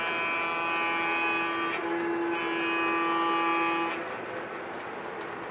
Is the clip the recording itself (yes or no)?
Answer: yes